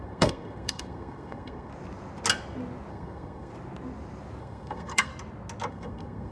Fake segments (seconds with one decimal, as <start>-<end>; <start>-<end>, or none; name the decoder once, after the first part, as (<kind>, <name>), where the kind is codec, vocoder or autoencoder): 0.0-1.7 (codec, SNAC); 2.9-3.5; 4.4-5.1; 5.7-6.3